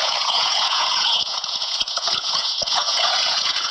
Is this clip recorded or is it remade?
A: remade